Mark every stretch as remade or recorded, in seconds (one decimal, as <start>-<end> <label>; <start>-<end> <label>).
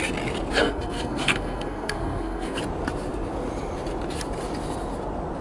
0.0-0.6 recorded; 0.6-2.6 remade; 2.6-5.4 recorded